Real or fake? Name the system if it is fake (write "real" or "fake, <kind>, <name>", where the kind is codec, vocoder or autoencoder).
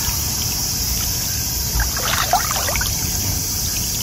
real